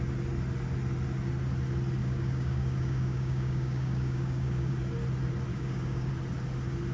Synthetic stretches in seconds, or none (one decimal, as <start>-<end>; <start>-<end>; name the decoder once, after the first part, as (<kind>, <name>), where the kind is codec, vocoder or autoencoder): 2.0-4.7 (codec, DAC); 5.5-6.1